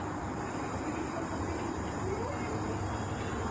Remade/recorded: remade